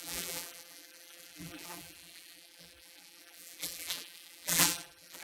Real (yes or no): no